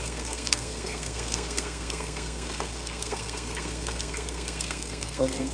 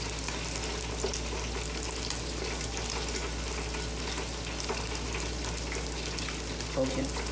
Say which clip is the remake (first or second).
first